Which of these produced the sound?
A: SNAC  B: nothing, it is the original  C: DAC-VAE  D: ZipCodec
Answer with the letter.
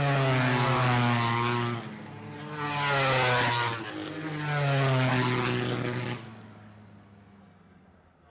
B